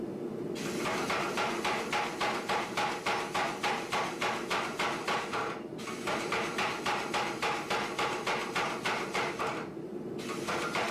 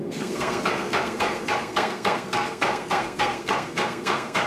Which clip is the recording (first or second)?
first